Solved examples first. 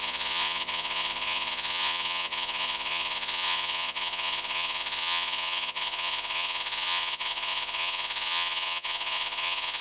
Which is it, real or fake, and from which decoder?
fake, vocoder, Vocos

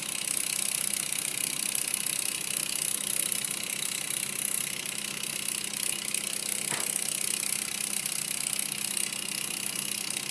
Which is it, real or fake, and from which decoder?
real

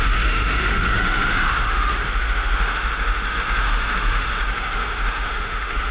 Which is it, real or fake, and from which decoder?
fake, autoencoder, DAC-VAE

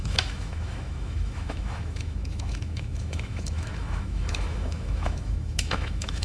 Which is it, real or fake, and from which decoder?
fake, autoencoder, DAC-VAE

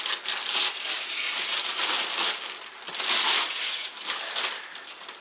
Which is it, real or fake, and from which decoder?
real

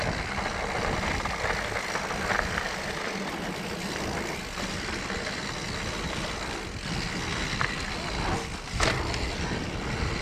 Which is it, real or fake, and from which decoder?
real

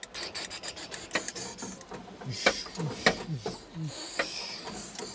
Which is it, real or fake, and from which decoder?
real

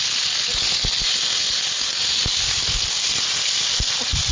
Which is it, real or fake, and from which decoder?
real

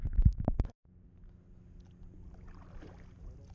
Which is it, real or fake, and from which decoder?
real